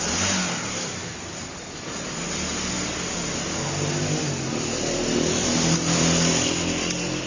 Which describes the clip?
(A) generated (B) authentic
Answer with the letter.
B